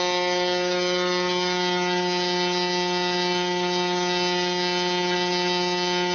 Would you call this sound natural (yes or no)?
yes